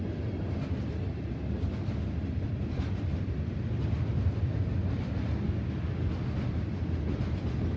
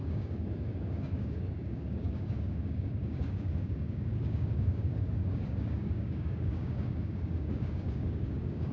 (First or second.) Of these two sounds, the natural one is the first